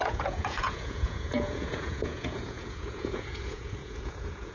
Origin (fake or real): fake